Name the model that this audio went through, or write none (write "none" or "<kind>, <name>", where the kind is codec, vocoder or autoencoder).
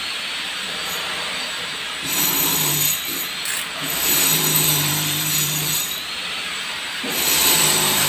vocoder, BigVGAN v2